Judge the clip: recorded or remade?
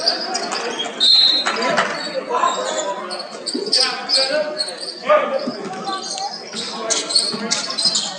recorded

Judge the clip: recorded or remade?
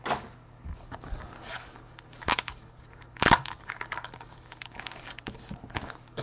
remade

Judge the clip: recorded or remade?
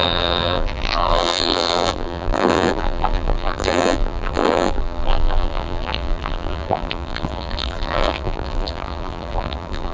remade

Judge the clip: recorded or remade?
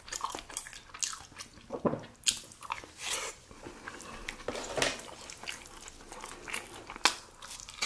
recorded